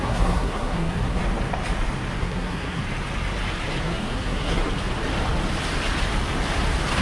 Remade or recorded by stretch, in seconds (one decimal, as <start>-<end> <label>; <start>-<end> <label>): 0.0-1.2 remade; 1.2-2.2 recorded; 2.2-2.8 remade; 2.8-3.8 recorded; 3.8-4.6 remade; 4.6-7.0 recorded